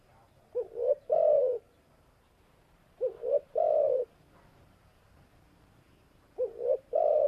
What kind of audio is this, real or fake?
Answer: fake